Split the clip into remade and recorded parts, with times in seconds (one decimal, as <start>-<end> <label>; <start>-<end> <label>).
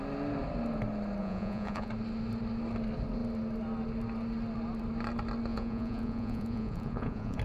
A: 0.0-1.2 recorded; 1.2-1.9 remade; 1.9-5.5 recorded; 5.5-7.4 remade